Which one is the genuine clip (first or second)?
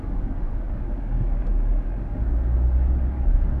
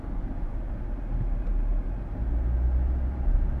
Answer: second